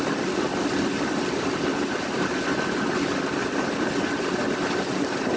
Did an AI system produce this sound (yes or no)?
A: no